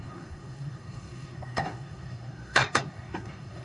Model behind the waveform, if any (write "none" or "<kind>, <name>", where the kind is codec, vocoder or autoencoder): codec, SNAC